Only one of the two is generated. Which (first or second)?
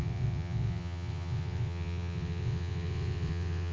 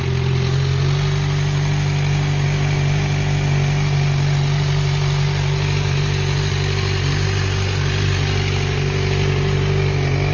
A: first